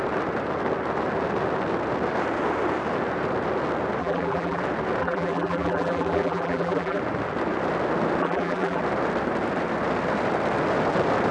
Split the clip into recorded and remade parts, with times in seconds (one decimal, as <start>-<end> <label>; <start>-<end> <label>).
0.0-4.0 recorded; 4.0-4.6 remade; 4.6-5.0 recorded; 5.0-7.0 remade; 7.0-8.2 recorded; 8.2-8.8 remade; 8.8-11.3 recorded